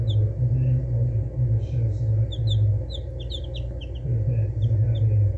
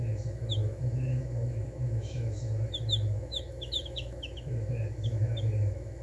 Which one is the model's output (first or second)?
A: second